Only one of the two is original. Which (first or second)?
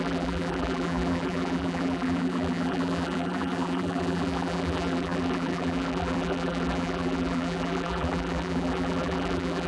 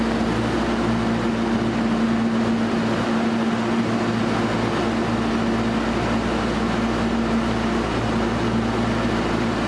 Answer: second